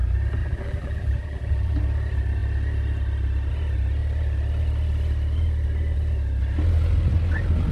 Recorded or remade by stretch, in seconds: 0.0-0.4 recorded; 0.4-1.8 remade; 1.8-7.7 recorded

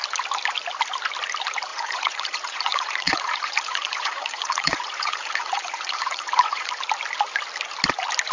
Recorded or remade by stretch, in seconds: 0.0-1.7 recorded; 1.7-6.7 remade; 6.7-8.3 recorded